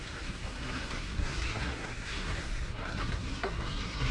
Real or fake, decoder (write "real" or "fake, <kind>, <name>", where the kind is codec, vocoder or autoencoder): fake, codec, SNAC